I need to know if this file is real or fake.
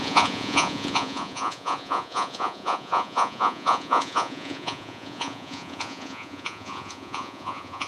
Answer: fake